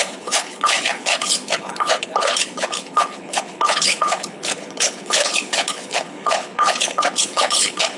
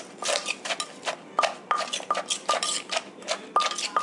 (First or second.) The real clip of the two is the second